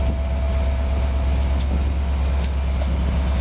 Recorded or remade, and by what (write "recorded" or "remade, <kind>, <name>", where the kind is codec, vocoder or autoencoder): recorded